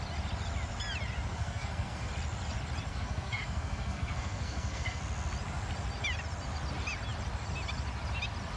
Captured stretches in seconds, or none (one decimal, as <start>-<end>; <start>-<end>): 0.0-1.3; 2.1-2.9; 5.0-8.6